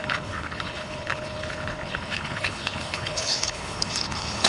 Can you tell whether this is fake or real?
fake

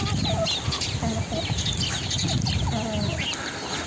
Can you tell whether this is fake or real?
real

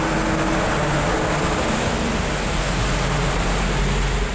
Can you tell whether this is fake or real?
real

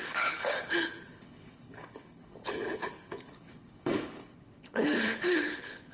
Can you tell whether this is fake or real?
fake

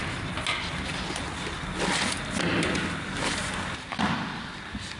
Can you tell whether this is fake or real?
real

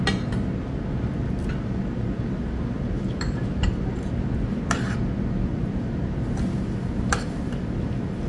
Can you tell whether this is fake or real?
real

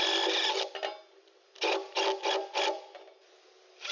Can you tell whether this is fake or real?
real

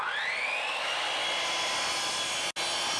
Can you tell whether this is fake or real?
real